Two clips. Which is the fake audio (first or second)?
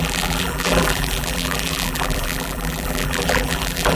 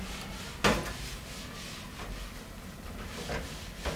first